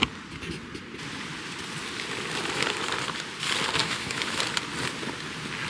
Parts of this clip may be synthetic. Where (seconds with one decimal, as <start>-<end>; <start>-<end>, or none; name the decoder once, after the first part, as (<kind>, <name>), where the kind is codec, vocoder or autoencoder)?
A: 3.8-4.4 (autoencoder, DAC-VAE)